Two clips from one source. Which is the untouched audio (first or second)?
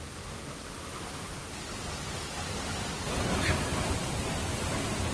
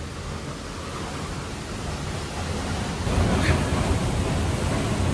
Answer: second